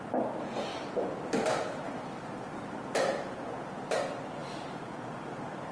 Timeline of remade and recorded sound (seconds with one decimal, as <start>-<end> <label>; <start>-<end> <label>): 0.0-5.7 recorded